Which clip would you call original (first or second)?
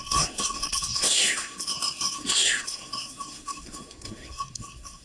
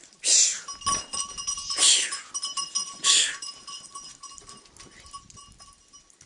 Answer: second